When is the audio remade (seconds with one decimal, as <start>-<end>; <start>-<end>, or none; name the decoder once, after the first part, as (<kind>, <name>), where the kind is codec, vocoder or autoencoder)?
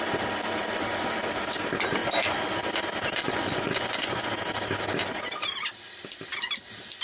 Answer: 3.2-4.3 (vocoder, Vocos)